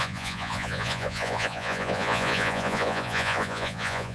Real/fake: fake